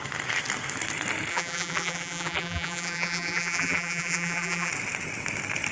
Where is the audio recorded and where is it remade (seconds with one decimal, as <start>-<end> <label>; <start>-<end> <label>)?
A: 0.0-1.3 recorded; 1.3-4.7 remade; 4.7-5.7 recorded